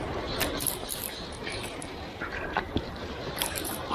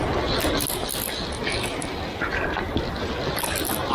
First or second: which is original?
second